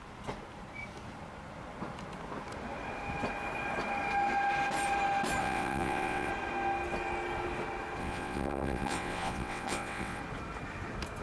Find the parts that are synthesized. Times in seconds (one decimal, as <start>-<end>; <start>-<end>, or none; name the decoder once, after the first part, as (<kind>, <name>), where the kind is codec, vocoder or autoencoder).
5.4-6.3 (vocoder, WaveNeXt); 8.0-10.2

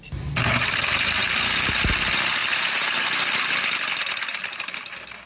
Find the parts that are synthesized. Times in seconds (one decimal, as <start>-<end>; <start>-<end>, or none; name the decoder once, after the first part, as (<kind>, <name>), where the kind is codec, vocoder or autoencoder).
none

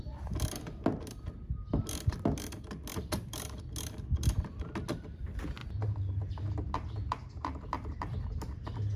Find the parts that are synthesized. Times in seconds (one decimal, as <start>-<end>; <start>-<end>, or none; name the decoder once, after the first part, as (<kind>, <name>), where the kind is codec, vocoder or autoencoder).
2.9-3.6 (vocoder, BigVGAN v2); 5.6-6.2

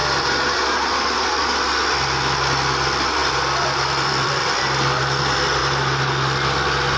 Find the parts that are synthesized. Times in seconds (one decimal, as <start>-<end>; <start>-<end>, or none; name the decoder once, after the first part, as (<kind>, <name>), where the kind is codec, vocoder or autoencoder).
0.0-1.4 (vocoder, BigVGAN v2); 3.2-5.0

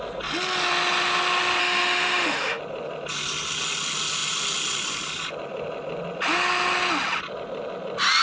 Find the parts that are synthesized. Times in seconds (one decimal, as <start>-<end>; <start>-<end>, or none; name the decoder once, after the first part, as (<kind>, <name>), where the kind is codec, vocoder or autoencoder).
1.6-2.6 (autoencoder, DAC-VAE)

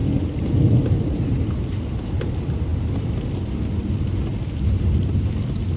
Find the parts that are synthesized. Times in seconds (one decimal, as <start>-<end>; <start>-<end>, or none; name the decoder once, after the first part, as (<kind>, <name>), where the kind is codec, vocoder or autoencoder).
none